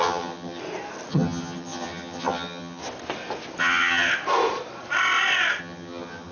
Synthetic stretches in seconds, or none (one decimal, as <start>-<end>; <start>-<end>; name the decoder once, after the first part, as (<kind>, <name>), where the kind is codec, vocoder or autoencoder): 0.0-0.6 (vocoder, HiFi-GAN); 1.1-2.8; 3.6-4.1; 5.6-6.3